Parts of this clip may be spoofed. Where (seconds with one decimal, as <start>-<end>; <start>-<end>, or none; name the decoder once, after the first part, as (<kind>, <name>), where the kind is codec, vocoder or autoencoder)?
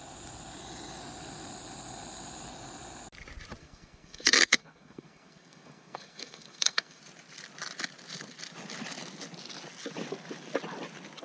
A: 3.6-7.0 (codec, SNAC)